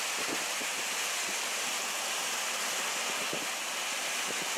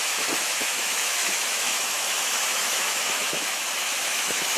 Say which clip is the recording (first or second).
first